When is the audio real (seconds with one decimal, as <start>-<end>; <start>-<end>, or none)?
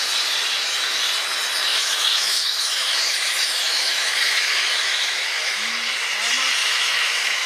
0.0-1.7; 5.7-6.6